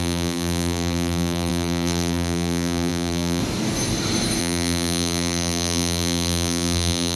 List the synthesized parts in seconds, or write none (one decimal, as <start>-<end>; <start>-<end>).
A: 0.0-3.4; 4.4-7.2